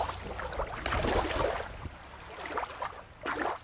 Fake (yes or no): no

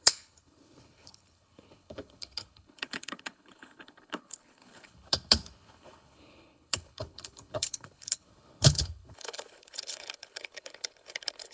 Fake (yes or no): yes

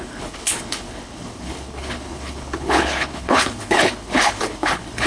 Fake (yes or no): yes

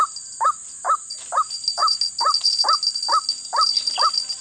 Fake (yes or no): no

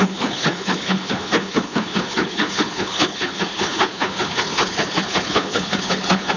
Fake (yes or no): yes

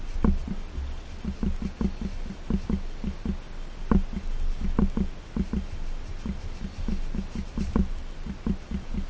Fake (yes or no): no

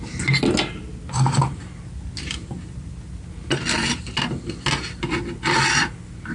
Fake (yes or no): no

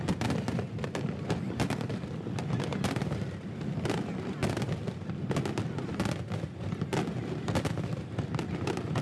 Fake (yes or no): no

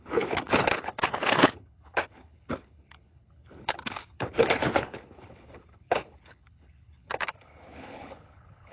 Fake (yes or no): yes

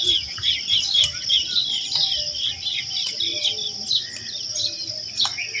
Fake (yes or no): no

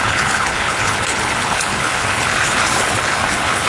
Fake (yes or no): yes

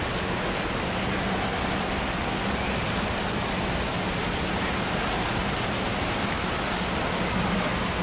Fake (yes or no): no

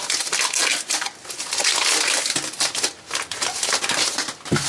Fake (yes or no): no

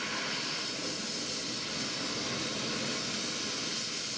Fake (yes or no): no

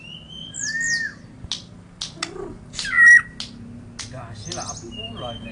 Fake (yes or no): no